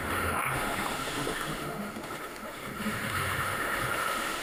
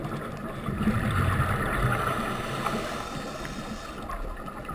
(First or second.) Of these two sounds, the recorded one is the second